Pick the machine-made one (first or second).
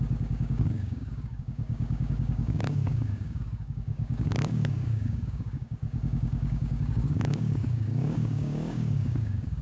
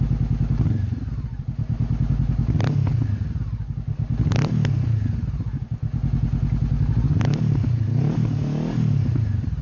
first